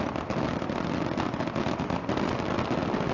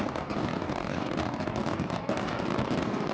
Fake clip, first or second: second